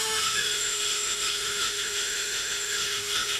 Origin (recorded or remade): remade